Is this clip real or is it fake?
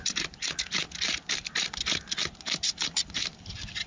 real